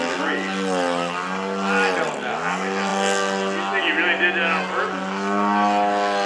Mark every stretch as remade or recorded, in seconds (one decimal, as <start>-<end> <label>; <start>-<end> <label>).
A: 0.0-6.3 recorded